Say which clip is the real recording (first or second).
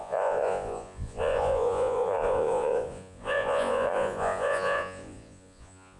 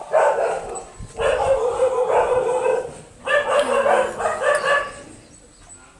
second